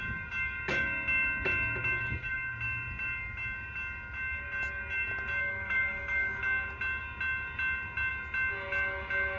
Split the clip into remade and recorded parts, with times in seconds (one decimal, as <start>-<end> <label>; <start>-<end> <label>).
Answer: 0.0-5.4 recorded; 5.4-6.4 remade; 6.4-9.4 recorded